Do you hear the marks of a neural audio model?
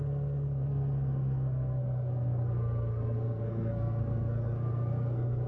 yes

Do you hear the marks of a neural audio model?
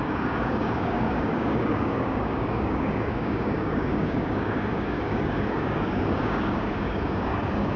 yes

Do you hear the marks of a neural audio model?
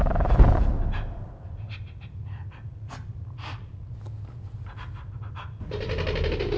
no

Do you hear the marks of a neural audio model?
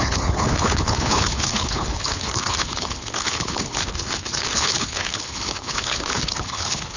yes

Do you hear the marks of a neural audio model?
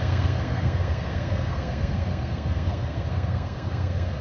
yes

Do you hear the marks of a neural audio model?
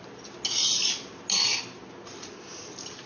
no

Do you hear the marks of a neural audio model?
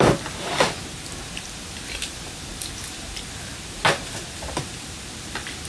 no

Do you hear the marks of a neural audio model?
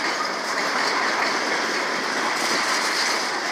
no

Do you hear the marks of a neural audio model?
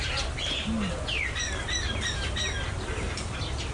no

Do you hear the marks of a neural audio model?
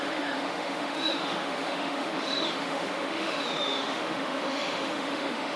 yes